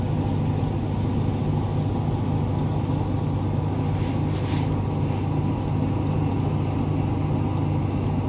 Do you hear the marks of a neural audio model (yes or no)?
no